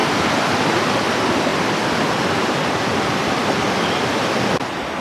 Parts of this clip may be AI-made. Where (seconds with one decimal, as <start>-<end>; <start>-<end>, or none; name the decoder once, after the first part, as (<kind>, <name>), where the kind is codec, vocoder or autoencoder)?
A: 1.5-2.9 (vocoder, BigVGAN v2)